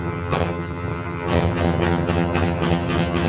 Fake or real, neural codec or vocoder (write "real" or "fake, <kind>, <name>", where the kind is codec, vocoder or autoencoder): fake, vocoder, HiFi-GAN